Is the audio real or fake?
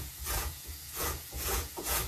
fake